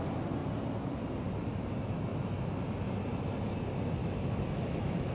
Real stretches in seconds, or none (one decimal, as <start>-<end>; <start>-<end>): 0.0-4.0